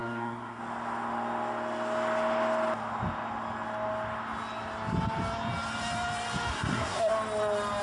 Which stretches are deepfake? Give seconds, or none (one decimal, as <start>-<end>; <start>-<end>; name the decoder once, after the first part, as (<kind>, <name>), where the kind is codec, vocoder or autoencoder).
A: 0.0-0.6 (codec, SNAC); 6.5-7.1

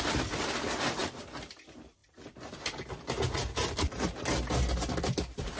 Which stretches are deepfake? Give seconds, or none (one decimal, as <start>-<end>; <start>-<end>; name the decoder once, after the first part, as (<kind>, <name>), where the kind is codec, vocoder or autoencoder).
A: none

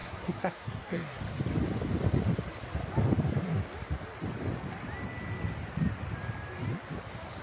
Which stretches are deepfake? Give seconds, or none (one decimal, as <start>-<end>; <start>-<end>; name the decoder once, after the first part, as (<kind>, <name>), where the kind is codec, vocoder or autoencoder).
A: 0.0-1.2 (codec, SNAC)

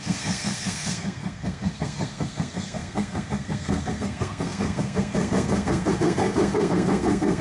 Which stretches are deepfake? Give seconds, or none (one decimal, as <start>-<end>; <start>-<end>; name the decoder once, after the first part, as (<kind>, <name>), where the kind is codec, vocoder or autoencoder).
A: 0.0-7.4 (codec, SNAC)